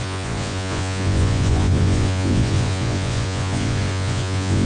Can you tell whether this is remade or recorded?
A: remade